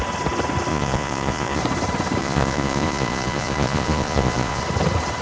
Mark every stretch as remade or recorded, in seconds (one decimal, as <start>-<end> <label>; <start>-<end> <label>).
0.0-0.7 recorded; 0.7-1.6 remade; 1.6-2.2 recorded; 2.2-4.6 remade; 4.6-5.2 recorded